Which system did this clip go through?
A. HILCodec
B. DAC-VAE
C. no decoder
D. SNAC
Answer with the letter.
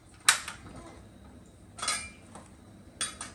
C